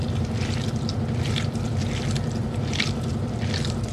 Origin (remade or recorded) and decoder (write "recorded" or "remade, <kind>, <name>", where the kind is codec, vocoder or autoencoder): remade, vocoder, BigVGAN v2